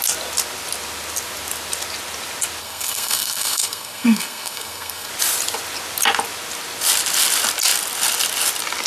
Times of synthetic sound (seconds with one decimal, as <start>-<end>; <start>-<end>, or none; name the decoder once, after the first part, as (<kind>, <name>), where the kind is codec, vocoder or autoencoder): 2.6-5.1 (codec, SNAC)